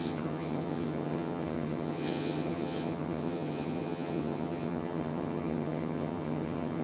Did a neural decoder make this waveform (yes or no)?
yes